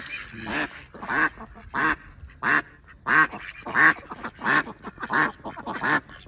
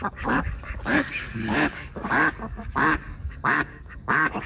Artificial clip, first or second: second